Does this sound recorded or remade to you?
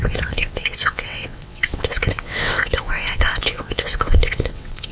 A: remade